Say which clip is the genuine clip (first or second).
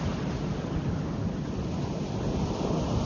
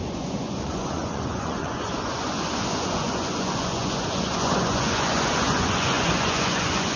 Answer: first